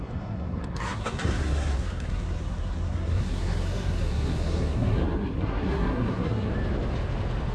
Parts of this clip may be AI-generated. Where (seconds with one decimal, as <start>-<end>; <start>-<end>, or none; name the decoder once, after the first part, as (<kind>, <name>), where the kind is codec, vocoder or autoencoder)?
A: 0.0-6.5 (codec, SNAC)